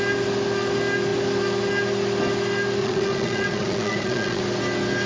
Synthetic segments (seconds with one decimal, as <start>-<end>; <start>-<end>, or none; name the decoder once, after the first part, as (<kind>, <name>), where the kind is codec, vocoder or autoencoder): 2.8-4.4 (vocoder, Vocos)